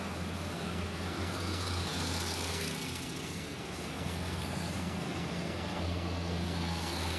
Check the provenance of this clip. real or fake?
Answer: fake